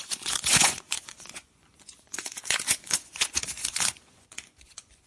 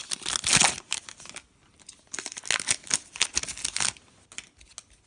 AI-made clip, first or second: first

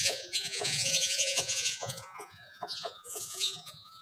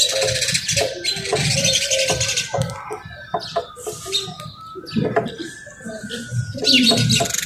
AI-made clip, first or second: first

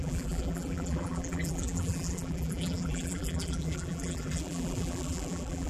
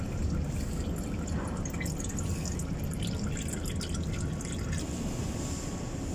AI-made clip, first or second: first